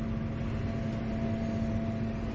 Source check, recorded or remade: recorded